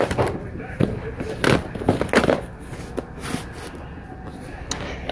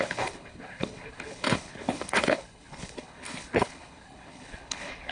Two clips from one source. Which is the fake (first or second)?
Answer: second